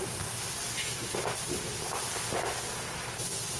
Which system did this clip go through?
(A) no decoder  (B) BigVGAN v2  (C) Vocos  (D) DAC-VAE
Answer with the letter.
A